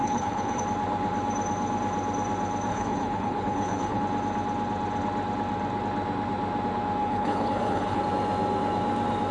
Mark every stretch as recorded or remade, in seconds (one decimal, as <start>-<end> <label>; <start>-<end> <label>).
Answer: 0.0-0.6 remade; 0.6-2.7 recorded; 2.7-4.0 remade; 4.0-7.0 recorded; 7.0-8.0 remade; 8.0-9.3 recorded